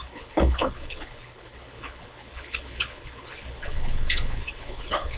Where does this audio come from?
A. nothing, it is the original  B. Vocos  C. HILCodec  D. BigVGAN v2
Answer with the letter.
C